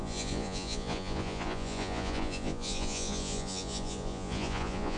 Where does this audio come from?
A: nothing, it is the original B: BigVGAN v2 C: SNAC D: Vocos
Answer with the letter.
D